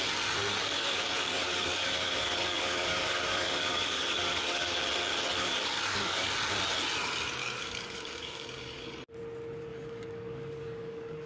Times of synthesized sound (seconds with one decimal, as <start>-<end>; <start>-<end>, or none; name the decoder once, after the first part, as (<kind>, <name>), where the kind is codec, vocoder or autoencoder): 0.6-4.8 (codec, DAC); 5.3-6.3; 7.4-8.9; 9.7-11.3